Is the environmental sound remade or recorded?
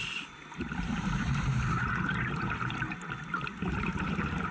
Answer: recorded